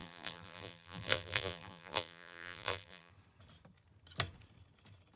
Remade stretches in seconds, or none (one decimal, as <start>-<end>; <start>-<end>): 0.0-3.1

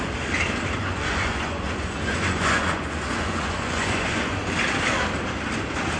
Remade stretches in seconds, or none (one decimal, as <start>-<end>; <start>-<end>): 0.8-4.4

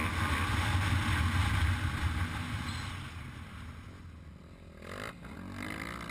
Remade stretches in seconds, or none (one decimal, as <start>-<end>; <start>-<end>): none

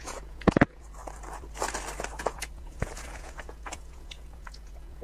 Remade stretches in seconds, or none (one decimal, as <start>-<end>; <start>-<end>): 0.0-1.0; 2.2-5.0

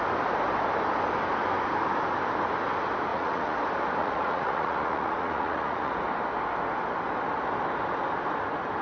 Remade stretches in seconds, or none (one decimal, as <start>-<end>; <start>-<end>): 3.1-3.6; 4.0-5.9

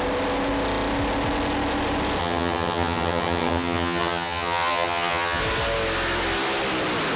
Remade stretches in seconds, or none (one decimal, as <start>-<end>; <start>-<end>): 2.2-5.4